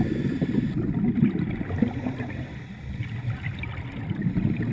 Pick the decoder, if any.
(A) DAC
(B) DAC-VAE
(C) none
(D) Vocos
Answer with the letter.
C